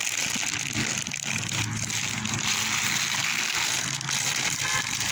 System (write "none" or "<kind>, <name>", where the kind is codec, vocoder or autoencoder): none